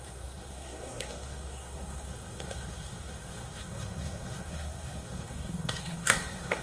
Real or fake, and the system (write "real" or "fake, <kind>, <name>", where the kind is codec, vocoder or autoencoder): fake, codec, SNAC